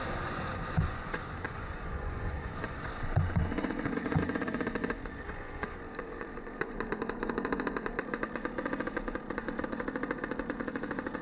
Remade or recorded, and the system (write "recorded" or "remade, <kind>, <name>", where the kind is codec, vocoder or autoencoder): remade, vocoder, Vocos